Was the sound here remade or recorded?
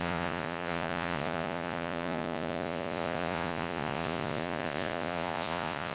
remade